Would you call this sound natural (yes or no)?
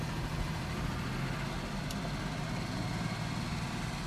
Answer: yes